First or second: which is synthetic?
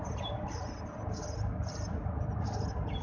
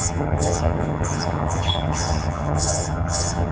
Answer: second